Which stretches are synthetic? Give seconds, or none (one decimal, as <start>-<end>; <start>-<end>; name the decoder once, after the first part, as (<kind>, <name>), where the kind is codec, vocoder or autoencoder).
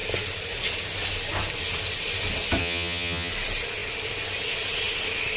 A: 2.6-3.3 (vocoder, HiFi-GAN)